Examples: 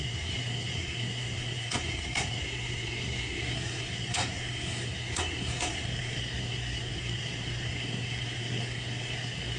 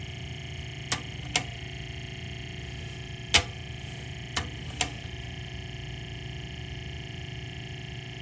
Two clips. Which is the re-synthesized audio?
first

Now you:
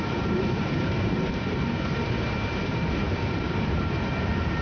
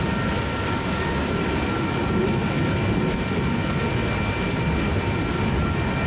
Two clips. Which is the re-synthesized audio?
first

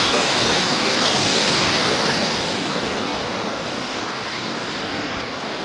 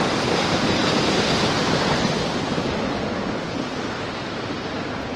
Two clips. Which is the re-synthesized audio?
first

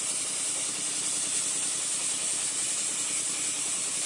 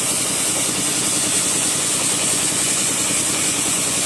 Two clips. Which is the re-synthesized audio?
second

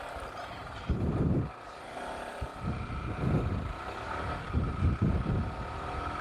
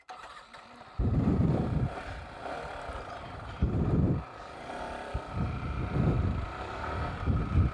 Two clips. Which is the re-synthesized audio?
second